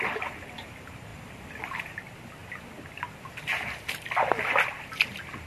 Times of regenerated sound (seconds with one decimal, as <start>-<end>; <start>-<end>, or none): none